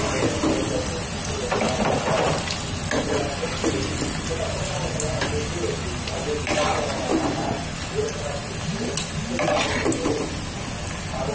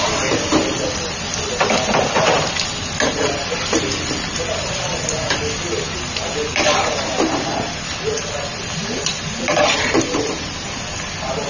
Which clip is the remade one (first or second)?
second